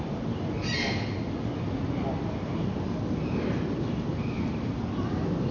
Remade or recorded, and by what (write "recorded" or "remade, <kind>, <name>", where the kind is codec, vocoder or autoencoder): recorded